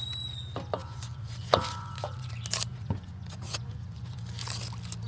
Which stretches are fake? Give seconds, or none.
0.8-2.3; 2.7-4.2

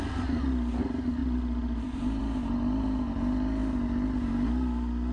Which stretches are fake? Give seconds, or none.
none

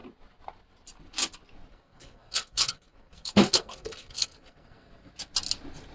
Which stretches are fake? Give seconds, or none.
1.7-5.1